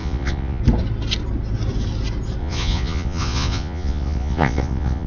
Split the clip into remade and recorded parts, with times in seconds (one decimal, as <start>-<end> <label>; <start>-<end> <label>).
0.0-0.6 remade; 0.6-2.4 recorded; 2.4-5.1 remade